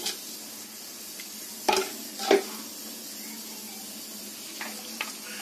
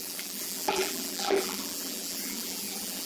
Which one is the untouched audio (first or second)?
first